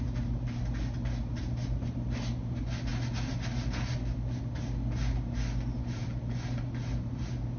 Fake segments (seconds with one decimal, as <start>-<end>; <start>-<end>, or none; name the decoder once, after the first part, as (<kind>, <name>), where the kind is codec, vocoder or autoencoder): none

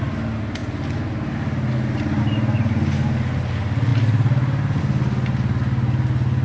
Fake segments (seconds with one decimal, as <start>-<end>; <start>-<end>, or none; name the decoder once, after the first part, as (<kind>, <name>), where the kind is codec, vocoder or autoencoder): none

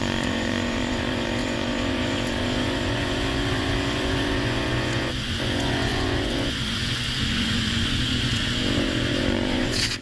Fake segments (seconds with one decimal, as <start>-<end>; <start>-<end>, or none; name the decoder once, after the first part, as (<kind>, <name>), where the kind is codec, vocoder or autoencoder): 0.0-10.0 (vocoder, Vocos)

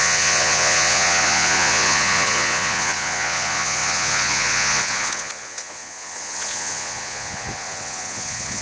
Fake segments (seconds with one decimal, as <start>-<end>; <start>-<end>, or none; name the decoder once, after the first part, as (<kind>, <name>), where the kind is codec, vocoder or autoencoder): 0.0-8.6 (vocoder, Vocos)

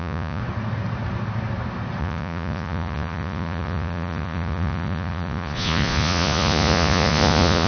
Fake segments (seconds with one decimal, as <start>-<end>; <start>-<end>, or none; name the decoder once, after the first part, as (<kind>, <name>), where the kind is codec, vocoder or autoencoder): 0.0-0.4 (vocoder, Vocos); 2.0-7.7

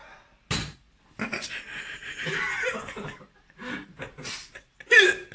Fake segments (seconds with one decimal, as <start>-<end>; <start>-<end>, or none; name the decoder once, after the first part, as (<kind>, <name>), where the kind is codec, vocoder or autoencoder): none